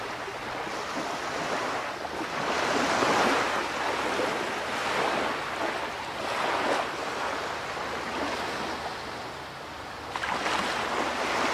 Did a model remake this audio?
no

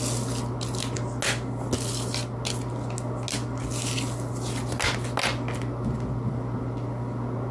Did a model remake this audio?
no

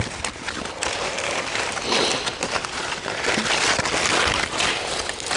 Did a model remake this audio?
no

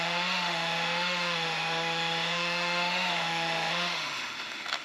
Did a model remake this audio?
yes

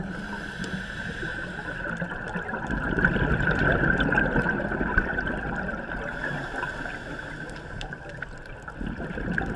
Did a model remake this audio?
no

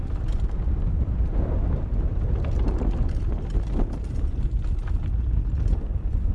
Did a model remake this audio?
no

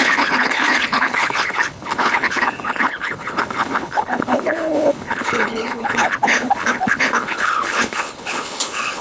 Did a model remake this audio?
yes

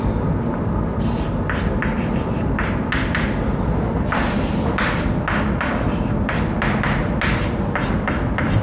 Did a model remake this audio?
no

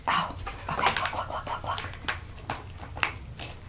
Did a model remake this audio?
no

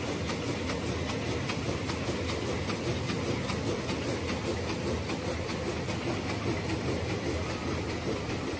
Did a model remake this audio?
no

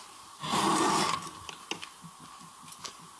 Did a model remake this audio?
no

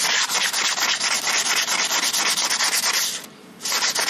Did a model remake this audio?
no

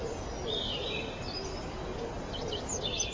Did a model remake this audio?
yes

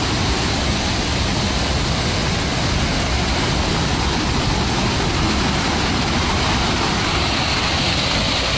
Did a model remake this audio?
no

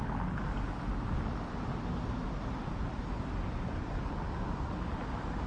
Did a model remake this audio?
no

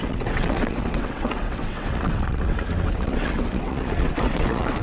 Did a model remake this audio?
yes